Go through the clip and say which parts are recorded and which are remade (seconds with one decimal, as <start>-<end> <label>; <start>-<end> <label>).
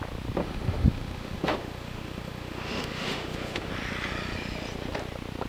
0.0-0.4 recorded; 0.4-3.7 remade; 3.7-5.5 recorded